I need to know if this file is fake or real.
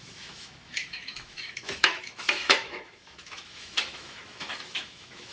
fake